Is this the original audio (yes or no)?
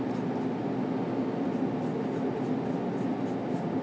yes